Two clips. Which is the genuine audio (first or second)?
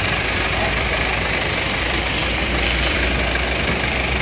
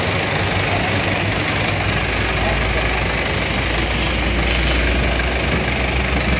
second